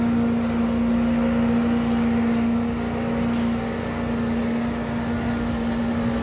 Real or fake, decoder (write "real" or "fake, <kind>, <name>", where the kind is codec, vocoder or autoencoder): real